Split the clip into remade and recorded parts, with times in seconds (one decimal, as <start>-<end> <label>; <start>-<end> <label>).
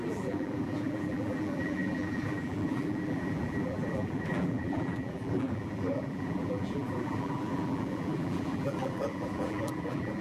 0.0-10.2 remade